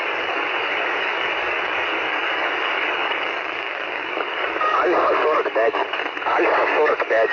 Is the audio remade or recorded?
remade